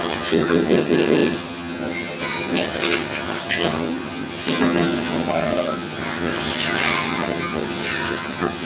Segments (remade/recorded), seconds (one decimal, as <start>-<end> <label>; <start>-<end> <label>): 0.0-8.7 remade